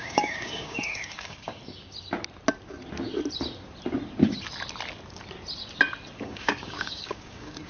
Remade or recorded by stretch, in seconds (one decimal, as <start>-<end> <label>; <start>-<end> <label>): 0.0-1.6 remade; 1.6-6.2 recorded; 6.2-7.7 remade